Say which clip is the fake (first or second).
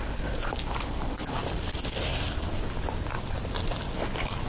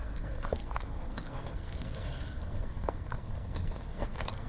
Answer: second